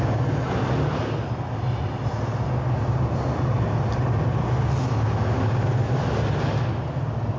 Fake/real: real